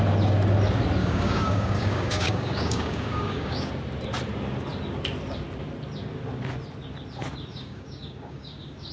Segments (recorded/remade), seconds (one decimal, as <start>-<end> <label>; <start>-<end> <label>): 0.0-1.0 recorded; 1.0-3.7 remade; 3.7-7.5 recorded; 7.5-8.9 remade